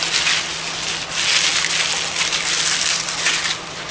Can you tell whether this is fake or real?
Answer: real